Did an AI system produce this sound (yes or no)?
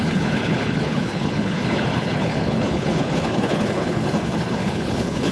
yes